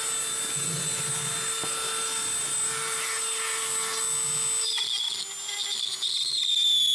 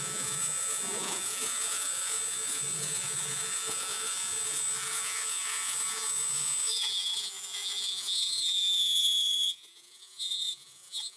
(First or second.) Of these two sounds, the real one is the first